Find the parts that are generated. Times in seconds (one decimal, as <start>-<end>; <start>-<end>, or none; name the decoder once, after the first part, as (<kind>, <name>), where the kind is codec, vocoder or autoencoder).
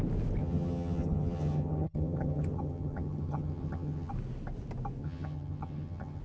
0.4-4.1 (vocoder, HiFi-GAN); 5.0-6.2